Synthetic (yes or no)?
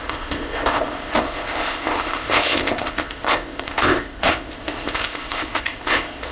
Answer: yes